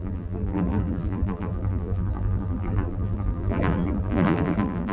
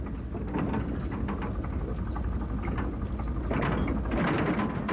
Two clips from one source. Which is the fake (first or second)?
first